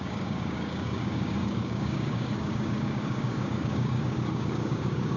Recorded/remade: remade